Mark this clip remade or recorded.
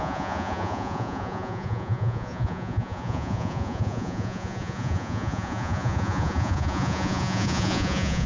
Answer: remade